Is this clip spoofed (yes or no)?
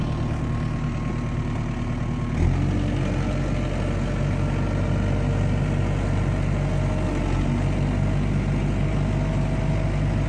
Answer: no